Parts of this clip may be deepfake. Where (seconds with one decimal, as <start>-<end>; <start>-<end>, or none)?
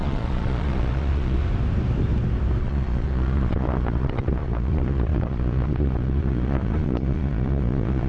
0.0-1.4; 2.6-8.1